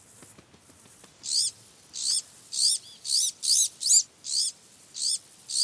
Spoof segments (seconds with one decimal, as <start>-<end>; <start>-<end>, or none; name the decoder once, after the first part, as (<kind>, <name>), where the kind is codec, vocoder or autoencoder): none